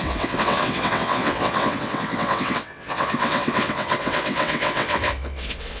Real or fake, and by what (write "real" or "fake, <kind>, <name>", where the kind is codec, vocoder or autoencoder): fake, vocoder, WaveNeXt